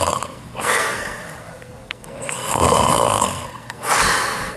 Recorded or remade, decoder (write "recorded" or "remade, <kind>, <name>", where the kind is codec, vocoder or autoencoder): remade, codec, SNAC